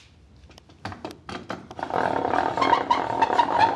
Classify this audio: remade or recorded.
recorded